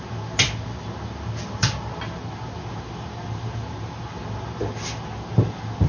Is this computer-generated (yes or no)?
no